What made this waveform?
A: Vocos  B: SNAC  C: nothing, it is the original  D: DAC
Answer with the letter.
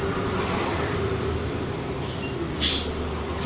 C